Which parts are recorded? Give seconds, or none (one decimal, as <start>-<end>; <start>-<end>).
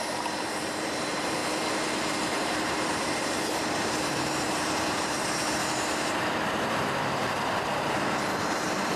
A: 1.4-2.4; 5.6-6.4